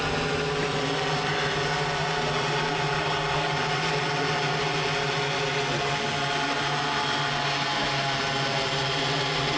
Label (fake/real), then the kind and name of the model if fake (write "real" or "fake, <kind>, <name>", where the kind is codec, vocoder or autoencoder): real